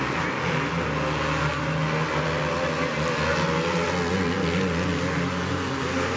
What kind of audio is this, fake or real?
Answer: real